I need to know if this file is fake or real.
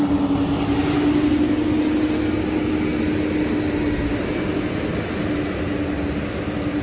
real